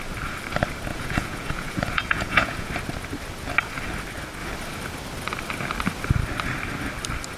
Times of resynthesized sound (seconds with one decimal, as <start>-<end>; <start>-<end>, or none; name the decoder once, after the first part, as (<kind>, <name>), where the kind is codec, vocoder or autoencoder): 0.9-2.7 (vocoder, Vocos)